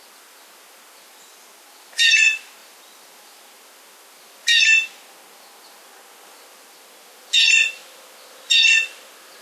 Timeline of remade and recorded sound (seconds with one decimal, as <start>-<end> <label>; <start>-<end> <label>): 0.0-9.4 recorded